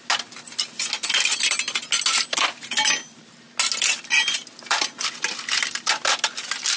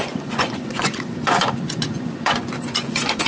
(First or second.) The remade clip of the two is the second